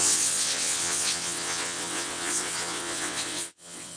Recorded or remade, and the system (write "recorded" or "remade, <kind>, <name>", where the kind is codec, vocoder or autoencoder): remade, vocoder, WaveNeXt